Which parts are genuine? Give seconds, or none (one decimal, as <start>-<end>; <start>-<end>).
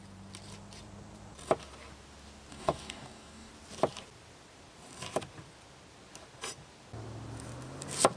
0.0-2.5; 3.5-8.2